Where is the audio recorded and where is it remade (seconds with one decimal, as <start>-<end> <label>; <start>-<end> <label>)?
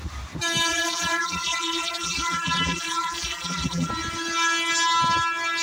0.0-0.7 recorded; 0.7-3.9 remade; 3.9-5.6 recorded